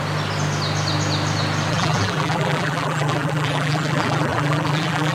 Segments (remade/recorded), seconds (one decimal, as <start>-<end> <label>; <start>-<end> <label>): 0.0-1.7 recorded; 1.7-5.1 remade

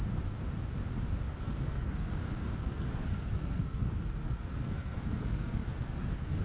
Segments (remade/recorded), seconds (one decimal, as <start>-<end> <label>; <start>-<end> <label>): 0.0-1.3 recorded; 1.3-2.1 remade; 2.1-2.6 recorded; 2.6-6.4 remade

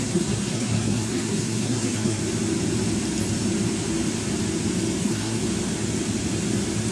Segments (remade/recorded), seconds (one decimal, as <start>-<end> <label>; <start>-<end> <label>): 0.0-2.2 remade; 2.2-5.0 recorded; 5.0-5.4 remade; 5.4-6.9 recorded

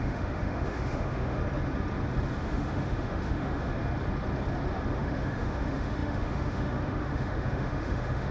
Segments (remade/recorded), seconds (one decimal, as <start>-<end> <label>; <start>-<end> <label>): 0.0-1.4 remade; 1.4-2.4 recorded; 2.4-3.7 remade; 3.7-4.9 recorded; 4.9-8.3 remade

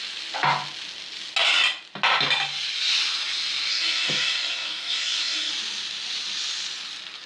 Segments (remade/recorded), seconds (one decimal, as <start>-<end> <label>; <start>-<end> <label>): 0.0-3.7 recorded; 3.7-5.5 remade; 5.5-7.3 recorded